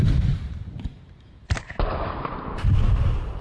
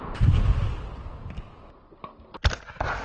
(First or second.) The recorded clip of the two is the second